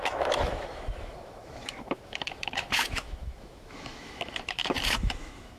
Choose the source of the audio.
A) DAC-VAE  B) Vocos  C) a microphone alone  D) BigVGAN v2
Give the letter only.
A